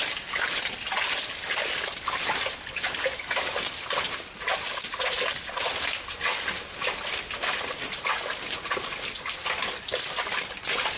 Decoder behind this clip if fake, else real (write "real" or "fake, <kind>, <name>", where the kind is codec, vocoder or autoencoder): real